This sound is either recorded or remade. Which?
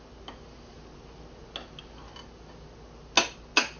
recorded